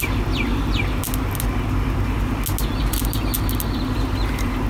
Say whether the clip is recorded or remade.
recorded